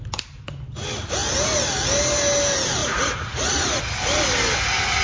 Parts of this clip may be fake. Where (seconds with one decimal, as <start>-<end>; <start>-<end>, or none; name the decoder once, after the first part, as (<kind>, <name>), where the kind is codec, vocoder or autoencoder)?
2.8-3.8 (vocoder, Vocos)